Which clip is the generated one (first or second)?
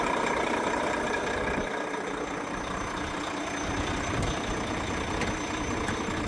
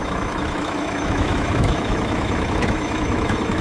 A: second